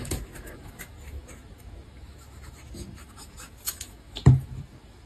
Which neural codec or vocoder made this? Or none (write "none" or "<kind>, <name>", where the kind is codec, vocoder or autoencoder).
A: autoencoder, DAC-VAE